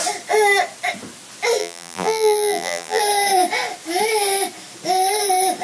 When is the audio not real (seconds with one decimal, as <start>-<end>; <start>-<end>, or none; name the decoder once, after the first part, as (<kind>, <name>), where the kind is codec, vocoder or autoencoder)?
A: 1.6-3.0 (vocoder, BigVGAN v2)